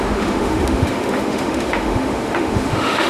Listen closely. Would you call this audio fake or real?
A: fake